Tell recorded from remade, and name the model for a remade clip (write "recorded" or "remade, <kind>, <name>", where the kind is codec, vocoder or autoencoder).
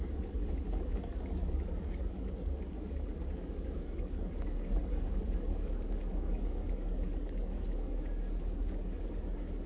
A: remade, codec, DAC